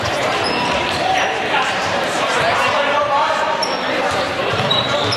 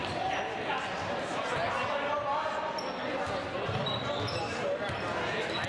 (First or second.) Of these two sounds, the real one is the second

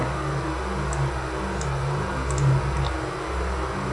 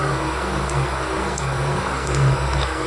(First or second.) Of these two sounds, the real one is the first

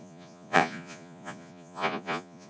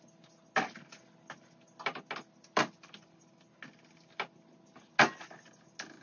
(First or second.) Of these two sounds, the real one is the second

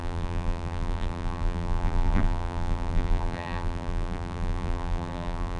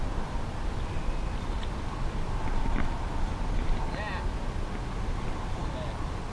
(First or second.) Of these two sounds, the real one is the second